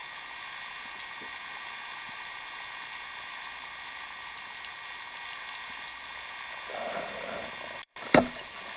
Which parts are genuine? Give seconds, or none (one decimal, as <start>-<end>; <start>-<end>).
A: 0.0-8.8